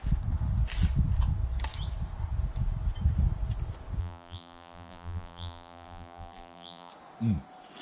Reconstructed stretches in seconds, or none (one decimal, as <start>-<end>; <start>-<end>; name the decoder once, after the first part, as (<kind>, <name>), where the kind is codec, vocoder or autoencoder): 4.0-6.9 (vocoder, BigVGAN v2)

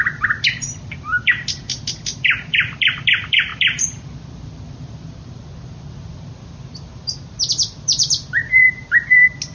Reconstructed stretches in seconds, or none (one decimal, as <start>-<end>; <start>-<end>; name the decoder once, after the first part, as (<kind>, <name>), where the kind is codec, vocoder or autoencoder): none

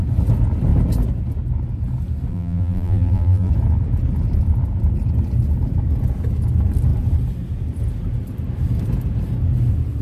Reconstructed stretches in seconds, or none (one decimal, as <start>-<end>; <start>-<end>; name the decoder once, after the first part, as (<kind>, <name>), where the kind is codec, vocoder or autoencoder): 2.3-3.5 (vocoder, BigVGAN v2)

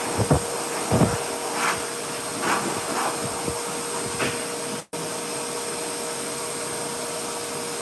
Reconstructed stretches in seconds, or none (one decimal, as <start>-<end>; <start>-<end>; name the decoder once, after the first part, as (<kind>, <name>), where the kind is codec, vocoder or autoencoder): none

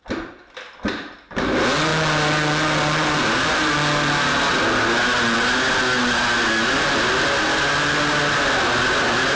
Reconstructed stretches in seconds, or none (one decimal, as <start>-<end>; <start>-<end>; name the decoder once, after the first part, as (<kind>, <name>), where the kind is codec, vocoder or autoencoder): none

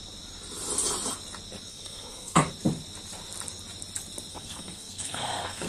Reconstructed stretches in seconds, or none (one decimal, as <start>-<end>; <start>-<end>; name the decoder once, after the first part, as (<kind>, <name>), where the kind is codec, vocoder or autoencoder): 1.7-2.5 (codec, SNAC); 4.3-5.7